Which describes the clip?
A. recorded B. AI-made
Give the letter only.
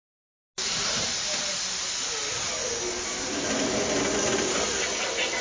A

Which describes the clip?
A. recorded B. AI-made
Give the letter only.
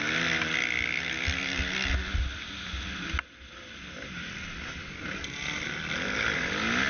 A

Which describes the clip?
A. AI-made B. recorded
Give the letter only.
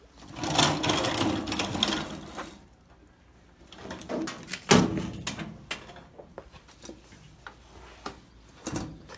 B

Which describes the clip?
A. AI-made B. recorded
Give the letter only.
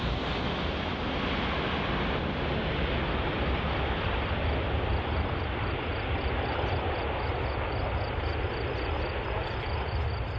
B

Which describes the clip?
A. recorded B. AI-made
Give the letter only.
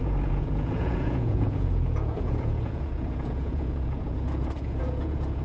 B